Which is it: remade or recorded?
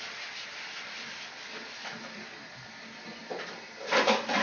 remade